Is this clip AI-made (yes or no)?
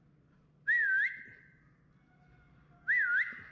no